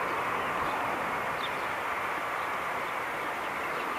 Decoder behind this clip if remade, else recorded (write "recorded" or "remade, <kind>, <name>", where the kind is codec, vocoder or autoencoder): recorded